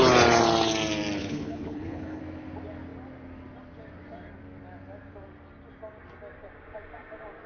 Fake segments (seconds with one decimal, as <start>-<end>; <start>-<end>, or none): 1.2-2.2